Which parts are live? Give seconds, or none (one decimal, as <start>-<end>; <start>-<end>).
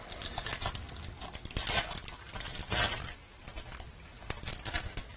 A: 0.0-2.6; 3.5-4.5